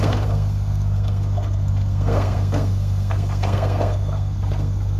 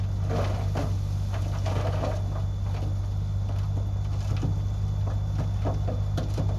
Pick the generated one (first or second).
first